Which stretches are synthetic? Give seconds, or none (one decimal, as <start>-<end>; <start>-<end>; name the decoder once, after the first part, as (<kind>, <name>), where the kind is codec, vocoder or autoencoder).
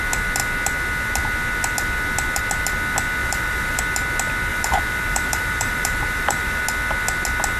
3.2-3.8 (vocoder, BigVGAN v2); 4.5-6.6